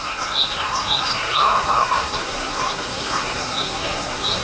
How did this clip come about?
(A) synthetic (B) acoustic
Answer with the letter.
A